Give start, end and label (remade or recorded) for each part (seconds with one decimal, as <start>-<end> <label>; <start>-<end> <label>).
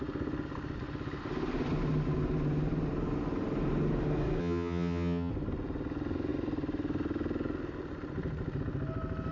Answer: 0.0-4.4 recorded; 4.4-5.3 remade; 5.3-9.3 recorded